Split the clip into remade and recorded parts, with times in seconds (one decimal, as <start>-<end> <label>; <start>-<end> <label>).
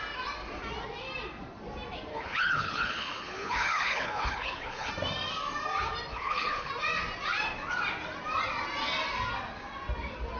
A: 0.0-2.1 recorded; 2.1-4.9 remade; 4.9-6.1 recorded; 6.1-6.7 remade; 6.7-10.4 recorded